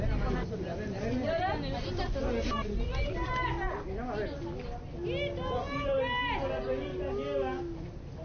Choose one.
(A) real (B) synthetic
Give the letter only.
A